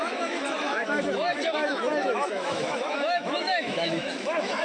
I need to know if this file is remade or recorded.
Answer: remade